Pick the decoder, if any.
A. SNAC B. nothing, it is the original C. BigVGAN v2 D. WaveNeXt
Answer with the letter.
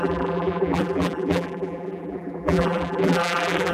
C